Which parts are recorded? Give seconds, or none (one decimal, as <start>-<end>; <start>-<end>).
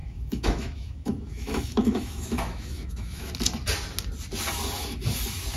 3.3-5.6